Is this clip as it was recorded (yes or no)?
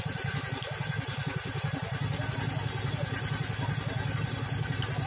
yes